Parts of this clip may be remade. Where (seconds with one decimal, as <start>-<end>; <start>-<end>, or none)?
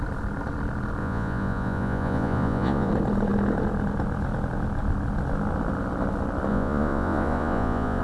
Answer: 1.0-2.9; 6.5-8.0